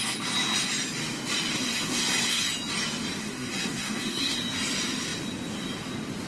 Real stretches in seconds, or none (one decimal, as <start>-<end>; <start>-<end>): 0.0-1.5; 2.4-3.2; 4.4-6.3